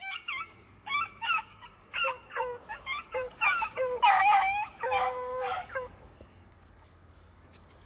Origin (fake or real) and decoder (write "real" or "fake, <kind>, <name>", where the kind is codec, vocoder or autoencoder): fake, codec, DAC